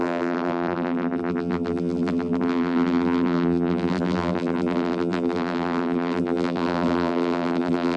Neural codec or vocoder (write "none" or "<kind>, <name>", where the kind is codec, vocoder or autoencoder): vocoder, BigVGAN v2